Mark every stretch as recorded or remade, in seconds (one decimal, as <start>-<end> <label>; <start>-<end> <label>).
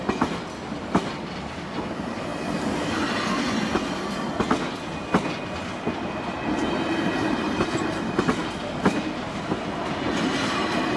0.0-11.0 recorded